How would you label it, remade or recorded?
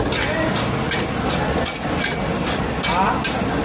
recorded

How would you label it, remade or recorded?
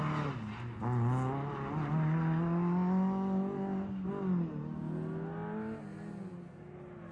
recorded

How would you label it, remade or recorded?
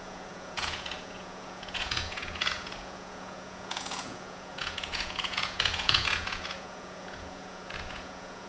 remade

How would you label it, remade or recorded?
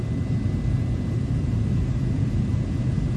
recorded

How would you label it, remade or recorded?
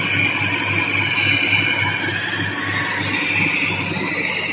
recorded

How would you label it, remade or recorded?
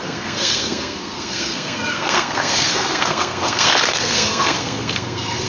remade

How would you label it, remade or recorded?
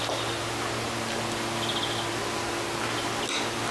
recorded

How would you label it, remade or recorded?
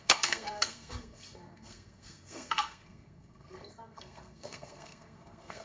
remade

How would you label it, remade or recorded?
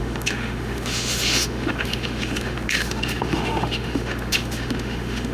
remade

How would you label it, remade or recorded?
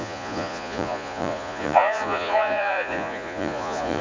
remade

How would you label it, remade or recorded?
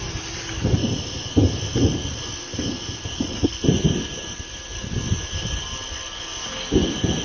recorded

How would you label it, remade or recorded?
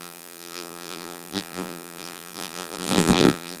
remade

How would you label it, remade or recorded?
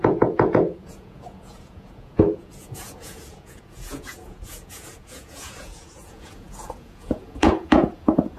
remade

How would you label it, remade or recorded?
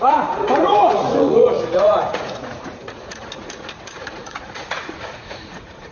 remade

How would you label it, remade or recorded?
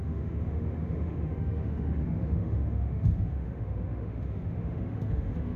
remade